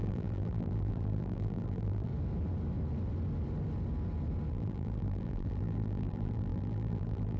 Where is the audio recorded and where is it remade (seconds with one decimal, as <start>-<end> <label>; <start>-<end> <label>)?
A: 0.0-2.1 remade; 2.1-4.5 recorded; 4.5-7.4 remade

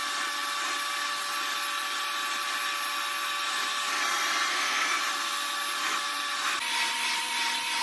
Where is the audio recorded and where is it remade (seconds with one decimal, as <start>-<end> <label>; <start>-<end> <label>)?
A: 0.0-4.5 recorded; 4.5-5.0 remade; 5.0-7.8 recorded